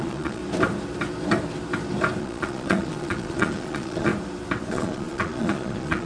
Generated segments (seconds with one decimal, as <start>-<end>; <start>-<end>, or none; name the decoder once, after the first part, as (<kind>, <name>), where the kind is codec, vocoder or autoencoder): 0.0-0.4 (vocoder, Vocos); 2.2-4.1; 4.7-6.1